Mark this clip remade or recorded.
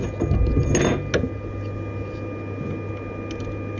recorded